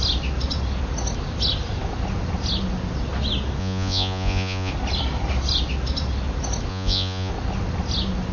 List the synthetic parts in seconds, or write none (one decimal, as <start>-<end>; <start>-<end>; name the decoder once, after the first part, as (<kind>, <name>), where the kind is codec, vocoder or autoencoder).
3.6-4.7 (vocoder, Vocos); 6.7-7.3